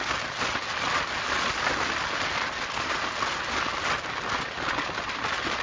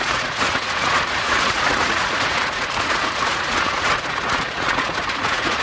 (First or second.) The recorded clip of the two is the first